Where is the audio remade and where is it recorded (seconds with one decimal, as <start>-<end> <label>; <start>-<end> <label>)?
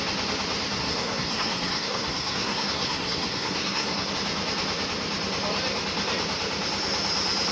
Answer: 0.0-0.8 recorded; 0.8-4.1 remade; 4.1-7.5 recorded